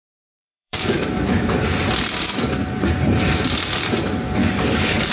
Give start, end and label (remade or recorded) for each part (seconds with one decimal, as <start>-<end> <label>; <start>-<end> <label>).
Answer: 0.0-1.1 remade; 1.1-4.4 recorded; 4.4-5.1 remade

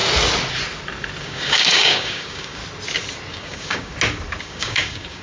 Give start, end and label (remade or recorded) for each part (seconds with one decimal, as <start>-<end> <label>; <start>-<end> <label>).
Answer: 0.0-1.2 recorded; 1.2-2.6 remade; 2.6-3.3 recorded; 3.3-3.9 remade; 3.9-4.4 recorded; 4.4-5.2 remade

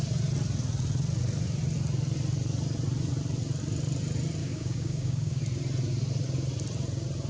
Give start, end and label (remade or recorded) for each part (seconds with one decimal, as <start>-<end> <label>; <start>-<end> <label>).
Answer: 0.0-4.4 recorded; 4.4-5.4 remade; 5.4-7.3 recorded